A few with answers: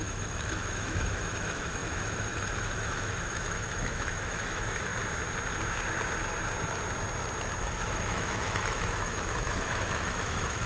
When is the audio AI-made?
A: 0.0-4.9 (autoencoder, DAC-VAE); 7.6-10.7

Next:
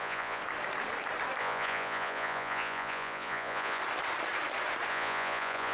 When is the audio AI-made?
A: 0.0-0.4 (vocoder, Vocos); 1.4-3.8; 4.9-5.7

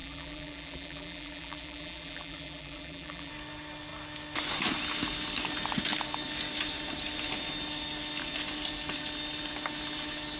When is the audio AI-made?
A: 0.0-3.3 (vocoder, BigVGAN v2)

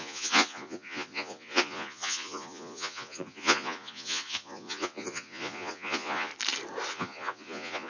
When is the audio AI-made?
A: 0.0-6.3 (vocoder, Vocos); 6.9-7.9

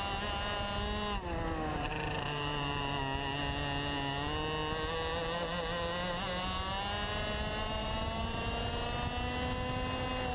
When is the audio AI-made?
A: 1.7-3.0 (vocoder, BigVGAN v2); 7.8-8.7

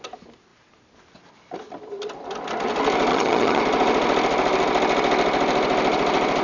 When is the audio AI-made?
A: 3.1-3.6 (vocoder, HiFi-GAN)

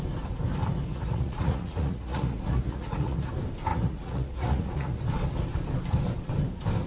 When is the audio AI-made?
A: 0.9-3.3 (vocoder, Vocos); 3.7-5.0